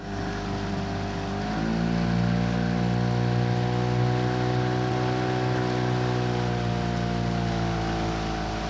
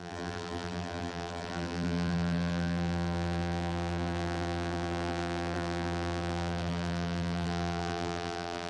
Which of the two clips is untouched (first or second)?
first